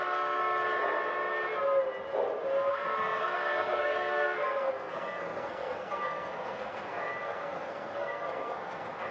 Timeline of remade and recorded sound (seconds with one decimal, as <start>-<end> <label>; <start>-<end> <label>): 0.0-0.4 remade; 0.4-2.7 recorded; 2.7-9.1 remade